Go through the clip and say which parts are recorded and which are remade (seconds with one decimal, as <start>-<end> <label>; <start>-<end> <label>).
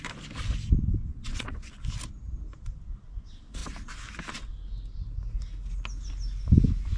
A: 0.0-1.1 recorded; 1.1-1.7 remade; 1.7-7.0 recorded